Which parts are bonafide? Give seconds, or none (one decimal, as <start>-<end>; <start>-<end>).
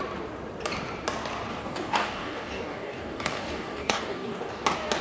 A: 0.0-1.5; 4.5-5.0